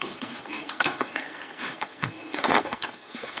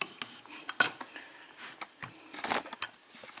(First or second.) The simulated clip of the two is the first